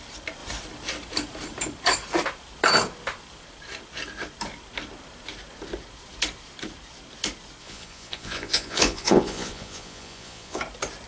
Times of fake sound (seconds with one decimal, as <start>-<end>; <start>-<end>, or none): 7.6-10.6